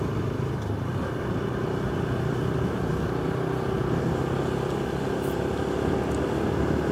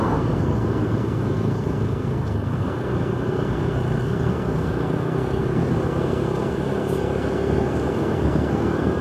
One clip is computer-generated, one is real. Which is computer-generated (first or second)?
second